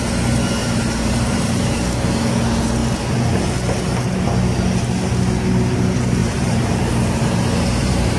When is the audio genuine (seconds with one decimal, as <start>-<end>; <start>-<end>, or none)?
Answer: 0.0-0.6; 1.6-6.2